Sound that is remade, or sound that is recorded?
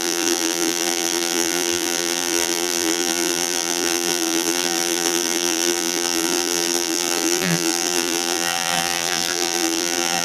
remade